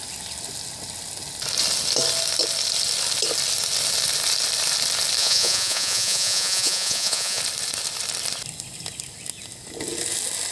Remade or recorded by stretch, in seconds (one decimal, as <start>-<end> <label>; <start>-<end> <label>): 0.0-5.2 recorded; 5.2-7.4 remade; 7.4-10.5 recorded